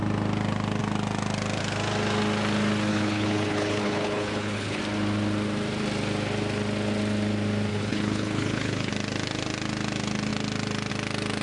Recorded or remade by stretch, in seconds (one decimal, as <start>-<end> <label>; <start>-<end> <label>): 0.0-2.9 recorded; 2.9-4.8 remade; 4.8-7.7 recorded; 7.7-8.9 remade; 8.9-11.4 recorded